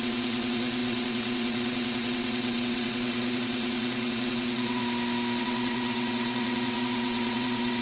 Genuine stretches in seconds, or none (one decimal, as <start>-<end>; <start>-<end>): 4.8-5.4